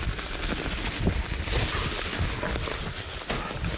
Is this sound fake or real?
real